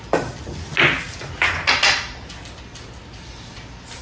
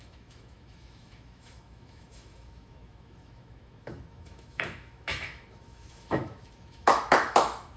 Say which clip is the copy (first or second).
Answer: second